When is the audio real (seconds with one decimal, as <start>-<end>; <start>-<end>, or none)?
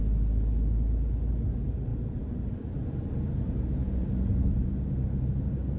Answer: 0.0-5.8